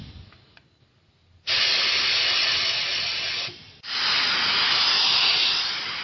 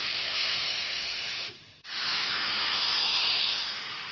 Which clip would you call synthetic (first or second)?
second